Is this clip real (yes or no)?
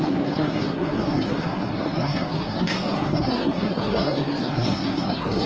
no